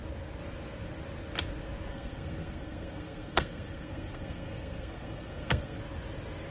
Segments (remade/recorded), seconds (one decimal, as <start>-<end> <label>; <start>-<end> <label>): 0.0-1.9 recorded; 1.9-5.8 remade; 5.8-6.5 recorded